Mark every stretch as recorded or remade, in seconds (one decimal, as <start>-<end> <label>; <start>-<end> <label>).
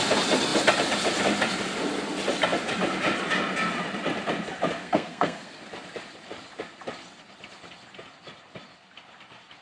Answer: 0.0-4.8 recorded; 4.8-5.6 remade; 5.6-9.6 recorded